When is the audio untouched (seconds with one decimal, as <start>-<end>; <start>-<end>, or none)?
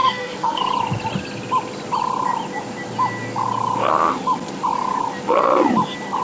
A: 0.6-6.2